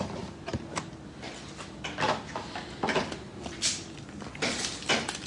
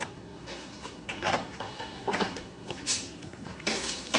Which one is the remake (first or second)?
second